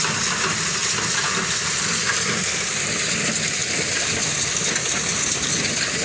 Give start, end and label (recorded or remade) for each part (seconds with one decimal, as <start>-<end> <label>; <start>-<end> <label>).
0.0-6.0 recorded